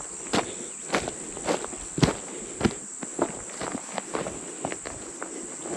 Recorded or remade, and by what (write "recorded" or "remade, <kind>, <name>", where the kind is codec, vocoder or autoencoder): recorded